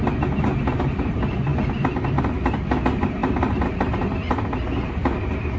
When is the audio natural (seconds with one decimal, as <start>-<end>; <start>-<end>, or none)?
0.0-5.6